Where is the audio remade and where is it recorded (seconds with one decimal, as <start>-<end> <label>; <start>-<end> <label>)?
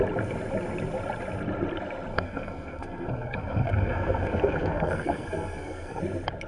0.0-2.1 recorded; 2.1-6.0 remade; 6.0-6.5 recorded